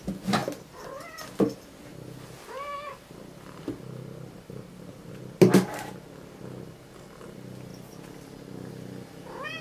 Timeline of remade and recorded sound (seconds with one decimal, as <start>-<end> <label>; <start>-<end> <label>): 0.0-9.6 recorded